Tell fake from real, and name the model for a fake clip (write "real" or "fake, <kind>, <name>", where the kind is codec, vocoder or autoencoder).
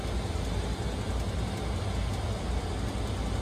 real